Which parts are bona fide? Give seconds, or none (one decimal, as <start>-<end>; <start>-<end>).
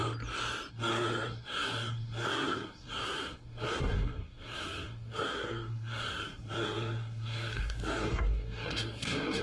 0.0-0.7